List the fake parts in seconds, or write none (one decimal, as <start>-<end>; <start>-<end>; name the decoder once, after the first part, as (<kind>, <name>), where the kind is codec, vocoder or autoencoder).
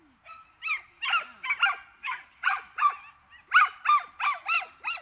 1.9-2.9 (vocoder, Vocos)